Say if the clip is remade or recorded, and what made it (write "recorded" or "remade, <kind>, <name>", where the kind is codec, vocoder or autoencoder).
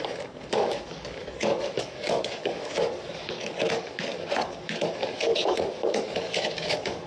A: remade, codec, DAC